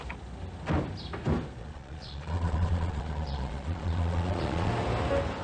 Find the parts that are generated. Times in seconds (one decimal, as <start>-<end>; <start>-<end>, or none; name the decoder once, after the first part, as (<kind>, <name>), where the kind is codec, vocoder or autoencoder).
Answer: 1.6-4.7 (vocoder, Vocos)